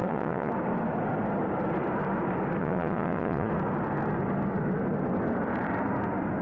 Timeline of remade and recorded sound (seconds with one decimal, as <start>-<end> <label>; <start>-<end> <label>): 0.0-0.5 remade; 0.5-2.6 recorded; 2.6-3.5 remade; 3.5-6.4 recorded

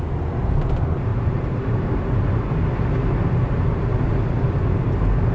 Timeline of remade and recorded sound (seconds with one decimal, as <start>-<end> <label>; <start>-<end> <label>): 0.0-1.1 recorded; 1.1-1.9 remade; 1.9-5.3 recorded